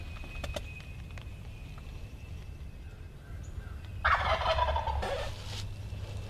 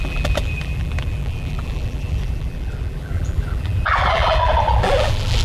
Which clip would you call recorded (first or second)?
first